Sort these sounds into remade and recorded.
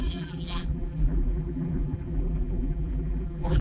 remade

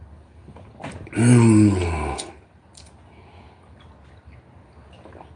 recorded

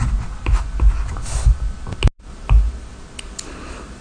recorded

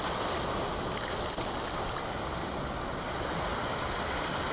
recorded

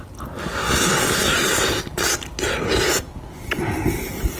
recorded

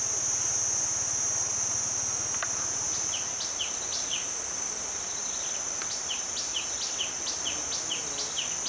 recorded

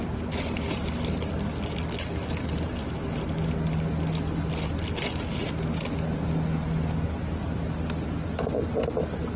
recorded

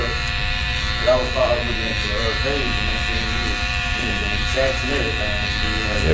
remade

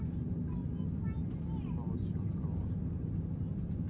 recorded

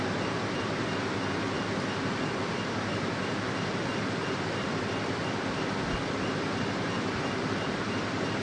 remade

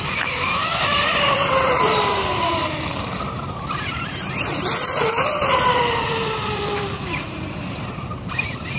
remade